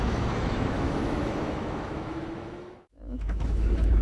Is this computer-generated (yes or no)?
yes